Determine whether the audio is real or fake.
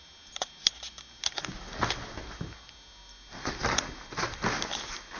real